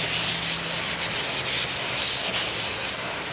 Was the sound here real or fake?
real